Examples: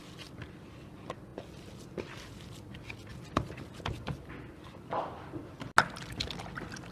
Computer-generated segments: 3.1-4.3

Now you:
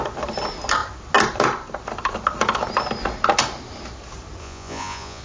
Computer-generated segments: 4.4-5.2

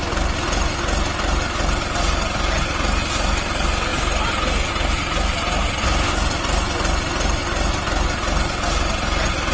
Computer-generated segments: none

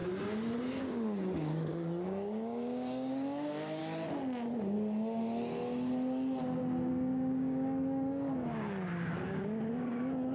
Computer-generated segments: 0.8-3.8; 6.9-10.3

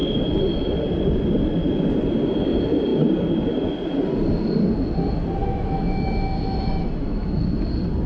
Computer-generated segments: 5.4-7.4

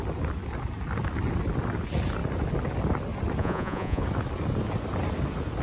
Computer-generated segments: 3.4-4.0

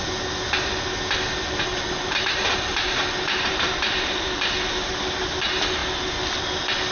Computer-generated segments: 1.7-5.0

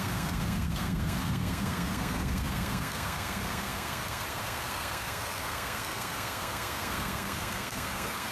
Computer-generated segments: 0.0-8.3